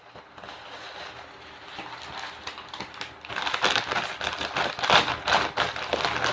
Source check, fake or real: real